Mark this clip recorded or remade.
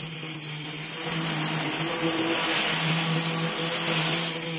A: recorded